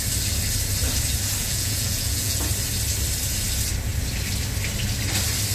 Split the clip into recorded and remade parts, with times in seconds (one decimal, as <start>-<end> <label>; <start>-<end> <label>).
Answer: 0.0-1.4 recorded; 1.4-2.4 remade; 2.4-5.5 recorded